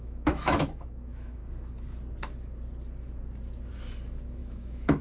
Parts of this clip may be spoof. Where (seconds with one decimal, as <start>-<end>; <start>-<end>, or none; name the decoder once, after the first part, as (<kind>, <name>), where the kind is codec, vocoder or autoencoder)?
0.0-1.4 (autoencoder, DAC-VAE); 4.4-5.0